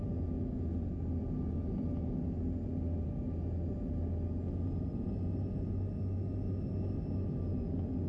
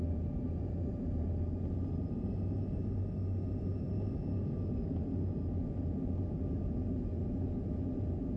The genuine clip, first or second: first